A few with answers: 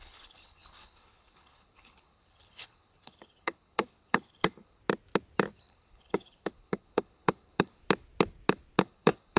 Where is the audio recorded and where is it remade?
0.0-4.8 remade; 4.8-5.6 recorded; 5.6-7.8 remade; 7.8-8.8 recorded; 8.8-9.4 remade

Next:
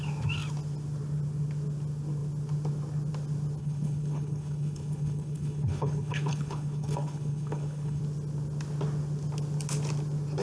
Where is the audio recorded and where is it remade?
0.0-3.6 recorded; 3.6-8.0 remade; 8.0-10.4 recorded

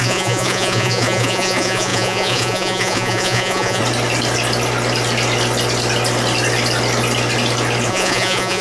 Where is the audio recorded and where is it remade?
0.0-3.8 remade; 3.8-7.9 recorded; 7.9-8.6 remade

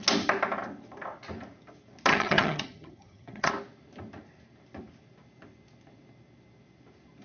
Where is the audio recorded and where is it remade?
0.0-2.1 recorded; 2.1-3.5 remade; 3.5-7.2 recorded